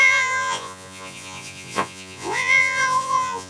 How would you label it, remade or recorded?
remade